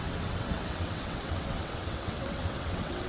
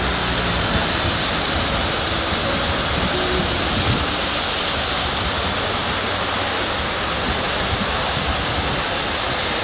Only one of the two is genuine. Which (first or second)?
second